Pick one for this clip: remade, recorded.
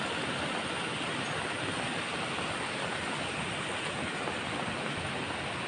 recorded